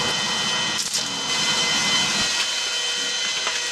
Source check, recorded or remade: recorded